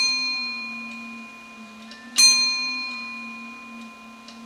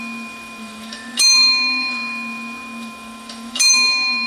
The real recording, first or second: first